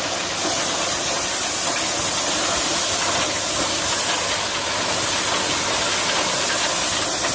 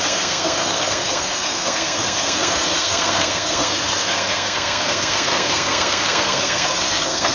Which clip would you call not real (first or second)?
second